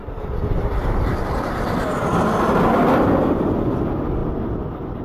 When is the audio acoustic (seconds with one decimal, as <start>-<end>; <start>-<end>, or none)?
0.0-5.0